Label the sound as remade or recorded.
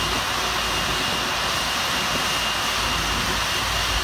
recorded